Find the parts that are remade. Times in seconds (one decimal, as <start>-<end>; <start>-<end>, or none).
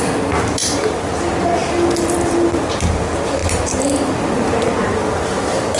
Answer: 0.6-1.2